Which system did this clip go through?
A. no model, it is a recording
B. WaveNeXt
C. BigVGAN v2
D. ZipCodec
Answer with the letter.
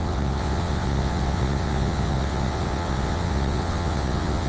B